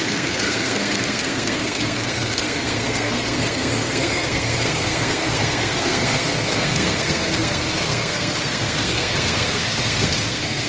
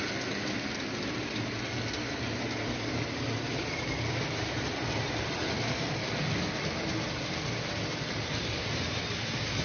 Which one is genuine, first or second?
second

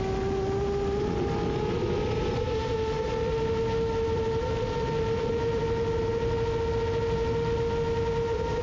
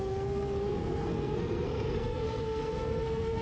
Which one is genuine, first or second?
first